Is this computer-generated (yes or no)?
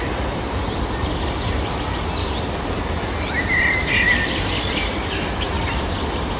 no